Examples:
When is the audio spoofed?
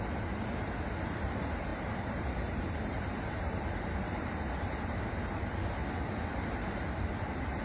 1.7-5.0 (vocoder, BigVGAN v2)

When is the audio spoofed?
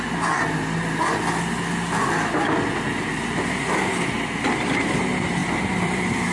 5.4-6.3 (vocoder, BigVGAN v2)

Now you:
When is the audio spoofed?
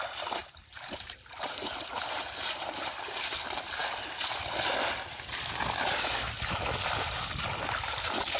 0.4-2.7 (vocoder, BigVGAN v2)